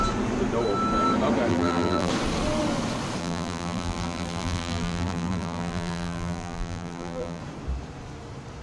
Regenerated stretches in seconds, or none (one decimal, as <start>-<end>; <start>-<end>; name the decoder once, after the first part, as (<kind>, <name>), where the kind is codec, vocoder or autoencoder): 1.5-2.1 (vocoder, BigVGAN v2); 3.2-7.4